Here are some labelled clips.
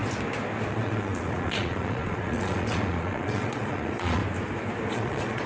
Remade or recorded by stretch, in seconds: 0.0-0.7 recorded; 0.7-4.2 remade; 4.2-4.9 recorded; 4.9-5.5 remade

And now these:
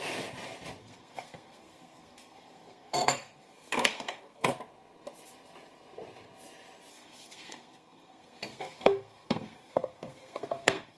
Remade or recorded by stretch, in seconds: 0.0-0.8 recorded; 0.8-4.6 remade; 4.6-6.9 recorded; 6.9-11.0 remade

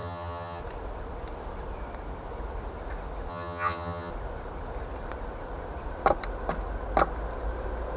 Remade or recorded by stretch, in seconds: 0.0-0.6 remade; 0.6-3.3 recorded; 3.3-4.1 remade; 4.1-8.0 recorded

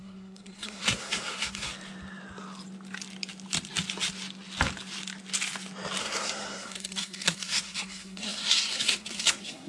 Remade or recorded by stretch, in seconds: 0.0-1.7 remade; 1.7-6.0 recorded; 6.0-9.7 remade

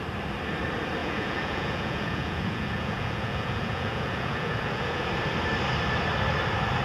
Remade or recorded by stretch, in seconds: 0.0-1.0 recorded; 1.0-5.1 remade; 5.1-6.8 recorded

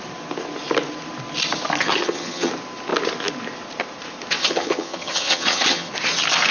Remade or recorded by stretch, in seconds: 0.0-1.8 recorded; 1.8-2.5 remade; 2.5-4.4 recorded; 4.4-5.9 remade; 5.9-6.5 recorded

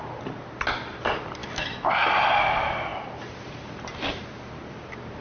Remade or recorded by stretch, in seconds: 0.0-1.4 recorded; 1.4-1.9 remade; 1.9-5.2 recorded

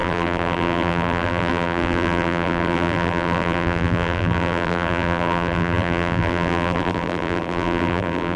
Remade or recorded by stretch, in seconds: 0.0-8.4 remade